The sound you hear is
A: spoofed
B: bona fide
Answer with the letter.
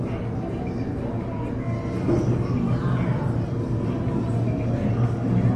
B